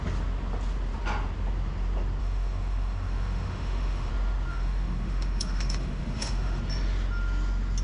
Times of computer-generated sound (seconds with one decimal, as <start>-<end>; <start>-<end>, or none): 2.2-4.1; 4.5-6.6